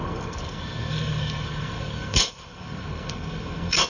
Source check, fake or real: fake